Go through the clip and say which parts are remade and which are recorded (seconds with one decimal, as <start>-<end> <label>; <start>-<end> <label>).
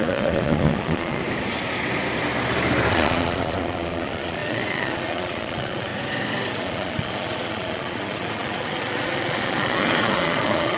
0.0-1.2 remade; 1.2-2.9 recorded; 2.9-5.9 remade; 5.9-6.5 recorded; 6.5-10.8 remade